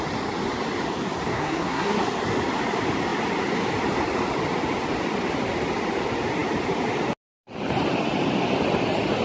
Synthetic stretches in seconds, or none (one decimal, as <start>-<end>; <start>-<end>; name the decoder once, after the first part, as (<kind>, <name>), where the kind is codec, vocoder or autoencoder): 1.3-2.0 (codec, SNAC)